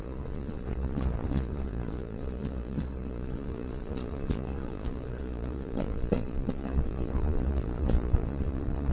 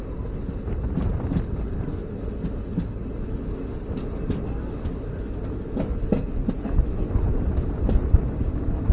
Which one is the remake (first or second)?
first